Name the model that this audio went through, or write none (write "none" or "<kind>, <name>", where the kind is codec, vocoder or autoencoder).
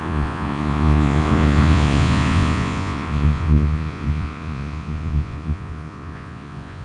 vocoder, Vocos